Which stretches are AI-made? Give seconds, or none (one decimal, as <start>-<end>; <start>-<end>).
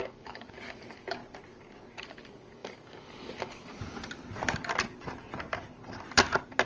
0.0-1.2; 1.9-3.7